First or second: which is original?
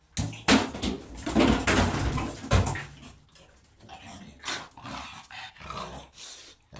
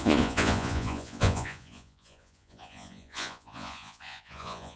first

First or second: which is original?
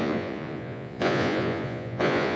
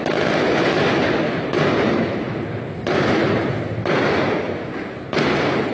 second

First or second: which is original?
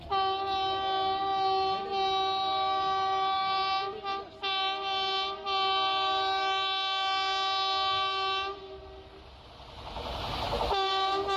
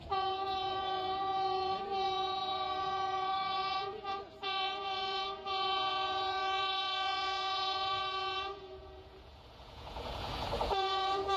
first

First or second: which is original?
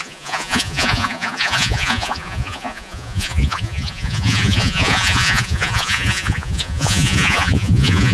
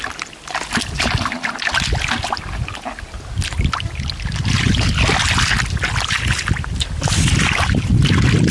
second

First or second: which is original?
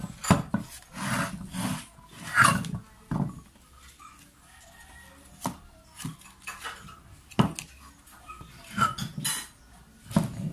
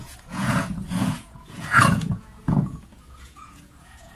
first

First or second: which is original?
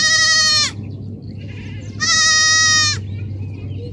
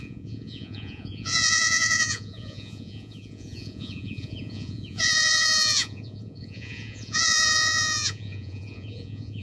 first